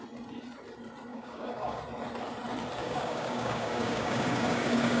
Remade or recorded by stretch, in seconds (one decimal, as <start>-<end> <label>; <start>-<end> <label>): 0.0-1.1 recorded; 1.1-1.8 remade; 1.8-2.8 recorded; 2.8-5.0 remade